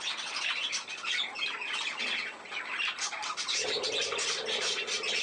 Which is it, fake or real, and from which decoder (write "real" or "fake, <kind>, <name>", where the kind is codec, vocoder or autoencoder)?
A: fake, vocoder, BigVGAN v2